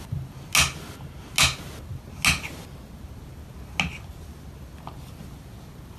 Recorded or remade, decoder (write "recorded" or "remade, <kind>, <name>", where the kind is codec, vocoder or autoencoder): recorded